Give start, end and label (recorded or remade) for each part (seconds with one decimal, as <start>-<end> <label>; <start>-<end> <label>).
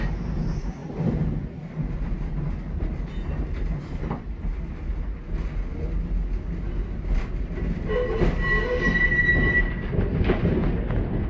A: 0.0-11.3 recorded